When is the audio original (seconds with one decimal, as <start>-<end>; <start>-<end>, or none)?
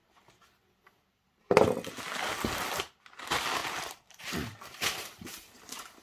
0.0-3.6; 4.2-6.0